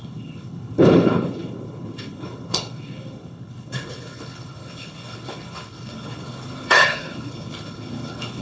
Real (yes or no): no